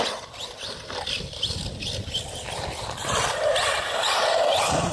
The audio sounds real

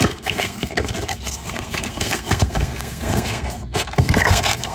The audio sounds fake